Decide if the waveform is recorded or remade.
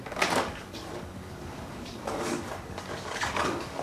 remade